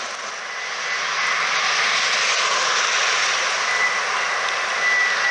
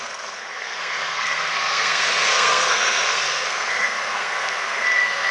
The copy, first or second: second